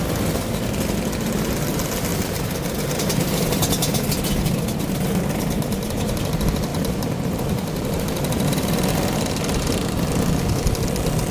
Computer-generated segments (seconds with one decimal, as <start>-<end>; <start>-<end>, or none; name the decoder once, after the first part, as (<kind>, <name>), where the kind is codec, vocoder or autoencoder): 2.1-3.4 (vocoder, BigVGAN v2); 6.7-8.9